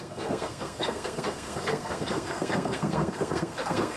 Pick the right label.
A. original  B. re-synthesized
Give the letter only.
B